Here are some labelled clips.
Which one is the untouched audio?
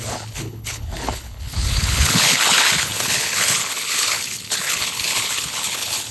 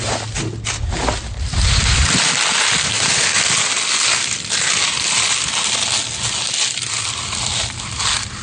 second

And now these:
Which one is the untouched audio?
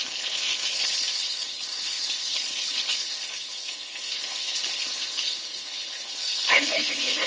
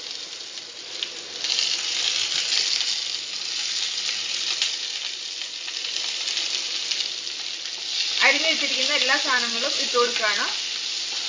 second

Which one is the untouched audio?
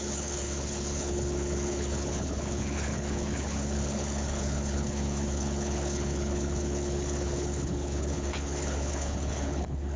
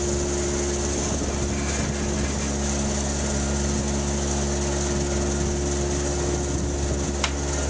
second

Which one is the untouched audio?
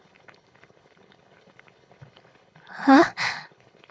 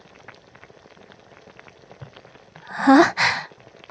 second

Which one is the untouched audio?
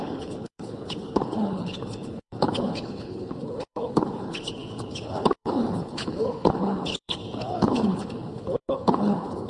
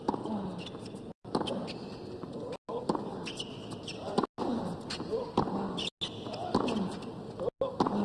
second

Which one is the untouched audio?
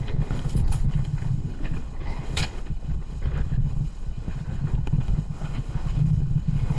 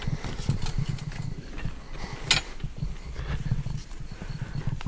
second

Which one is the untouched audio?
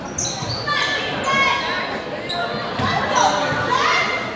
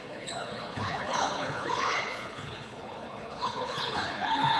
first